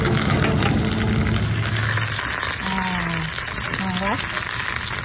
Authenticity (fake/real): real